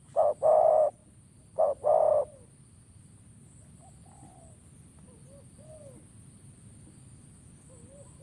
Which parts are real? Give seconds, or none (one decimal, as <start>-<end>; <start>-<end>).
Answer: 0.0-8.2